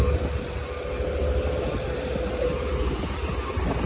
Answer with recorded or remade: recorded